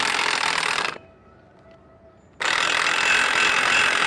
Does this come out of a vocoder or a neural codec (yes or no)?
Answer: no